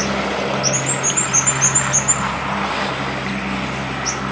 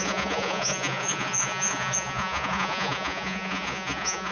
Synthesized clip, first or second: second